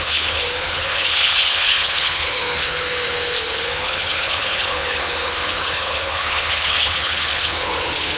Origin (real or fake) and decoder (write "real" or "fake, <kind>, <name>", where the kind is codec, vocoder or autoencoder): fake, codec, HILCodec